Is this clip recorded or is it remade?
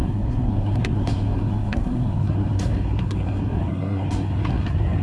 remade